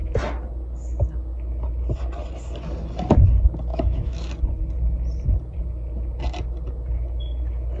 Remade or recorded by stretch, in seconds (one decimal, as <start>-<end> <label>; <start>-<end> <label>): 0.0-3.7 recorded; 3.7-4.3 remade; 4.3-7.8 recorded